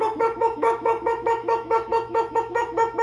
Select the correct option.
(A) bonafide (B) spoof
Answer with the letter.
B